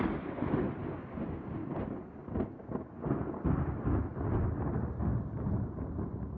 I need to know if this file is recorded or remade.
recorded